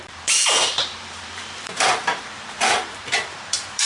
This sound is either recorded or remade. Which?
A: remade